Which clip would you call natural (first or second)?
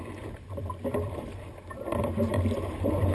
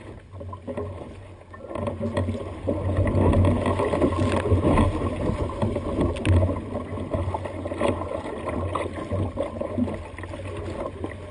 second